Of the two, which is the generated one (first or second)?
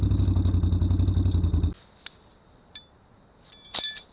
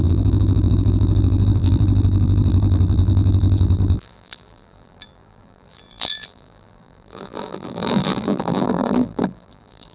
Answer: second